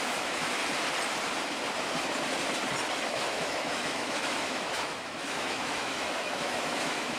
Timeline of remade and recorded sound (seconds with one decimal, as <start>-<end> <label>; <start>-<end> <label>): 0.0-0.6 remade; 0.6-3.1 recorded; 3.1-7.2 remade